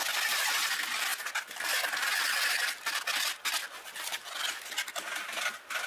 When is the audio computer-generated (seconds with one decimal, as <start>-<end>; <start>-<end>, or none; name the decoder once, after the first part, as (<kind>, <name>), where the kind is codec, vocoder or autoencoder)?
none